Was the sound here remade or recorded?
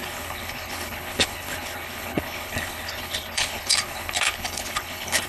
remade